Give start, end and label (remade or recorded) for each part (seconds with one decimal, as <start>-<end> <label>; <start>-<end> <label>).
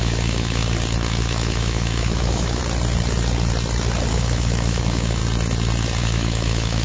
0.0-0.6 remade; 0.6-1.2 recorded; 1.2-2.6 remade; 2.6-4.1 recorded; 4.1-5.2 remade; 5.2-6.0 recorded; 6.0-6.8 remade